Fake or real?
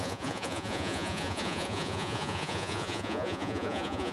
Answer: fake